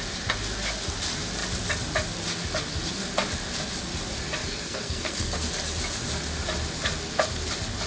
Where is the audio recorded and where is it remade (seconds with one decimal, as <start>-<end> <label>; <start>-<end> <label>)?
0.0-4.4 recorded; 4.4-5.5 remade; 5.5-7.9 recorded